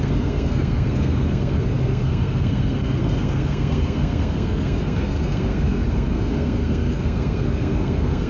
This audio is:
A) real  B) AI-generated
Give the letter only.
B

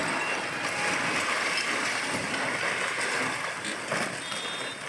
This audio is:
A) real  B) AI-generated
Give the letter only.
A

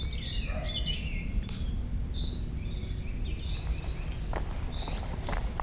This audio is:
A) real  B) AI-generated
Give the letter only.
A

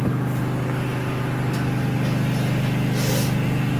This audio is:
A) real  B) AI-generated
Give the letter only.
A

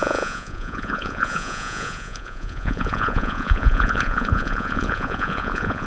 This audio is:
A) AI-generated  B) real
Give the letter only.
A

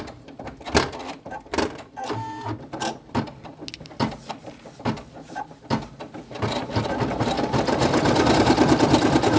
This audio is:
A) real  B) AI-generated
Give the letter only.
A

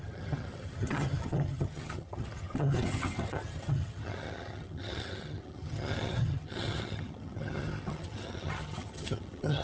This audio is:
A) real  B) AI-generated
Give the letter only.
B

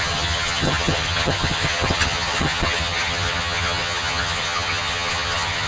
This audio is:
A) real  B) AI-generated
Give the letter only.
B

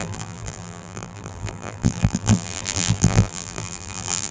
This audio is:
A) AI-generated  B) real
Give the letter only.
A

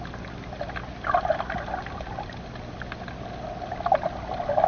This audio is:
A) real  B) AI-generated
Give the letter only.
A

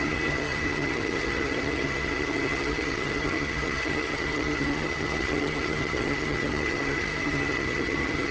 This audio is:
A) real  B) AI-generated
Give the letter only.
B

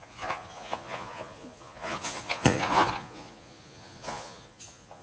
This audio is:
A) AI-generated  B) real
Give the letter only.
A